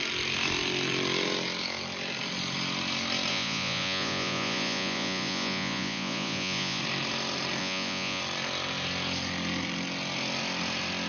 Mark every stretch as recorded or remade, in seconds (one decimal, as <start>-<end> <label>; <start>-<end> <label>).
0.0-3.3 recorded; 3.3-6.8 remade; 6.8-7.6 recorded; 7.6-8.2 remade; 8.2-11.1 recorded